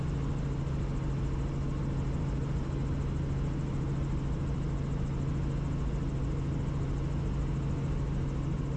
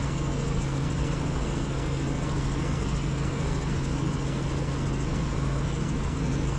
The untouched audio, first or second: first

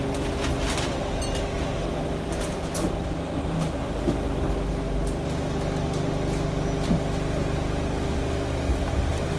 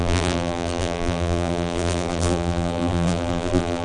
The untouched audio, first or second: first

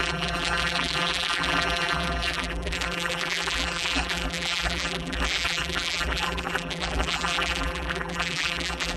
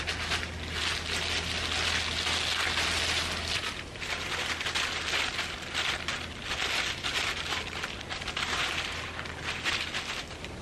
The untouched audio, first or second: second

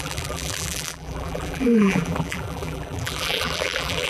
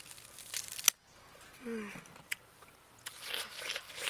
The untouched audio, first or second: second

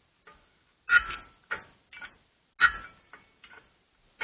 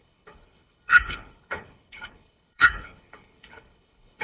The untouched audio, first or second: first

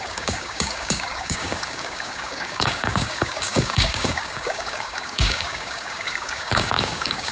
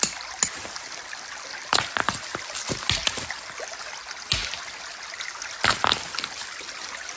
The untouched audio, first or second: second